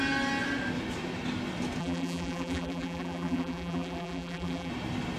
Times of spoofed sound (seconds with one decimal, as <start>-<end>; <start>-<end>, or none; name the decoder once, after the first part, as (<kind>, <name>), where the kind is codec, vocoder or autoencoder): 1.8-4.7 (vocoder, BigVGAN v2)